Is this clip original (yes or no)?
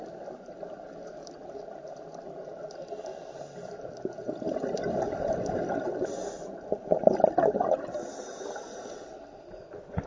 yes